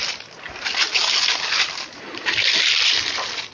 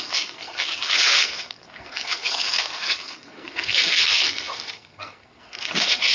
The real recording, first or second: first